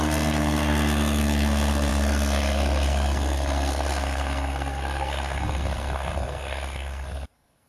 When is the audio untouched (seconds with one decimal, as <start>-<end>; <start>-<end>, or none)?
none